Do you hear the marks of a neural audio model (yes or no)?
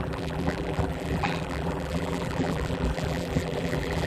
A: yes